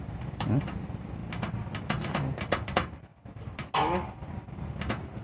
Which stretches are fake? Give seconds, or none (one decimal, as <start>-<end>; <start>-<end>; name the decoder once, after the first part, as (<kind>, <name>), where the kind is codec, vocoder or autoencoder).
0.0-1.2 (vocoder, BigVGAN v2); 2.0-3.1